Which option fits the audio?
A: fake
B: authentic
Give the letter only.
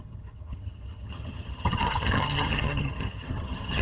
A